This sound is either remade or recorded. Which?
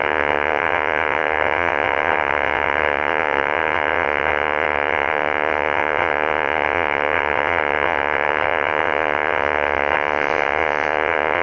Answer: remade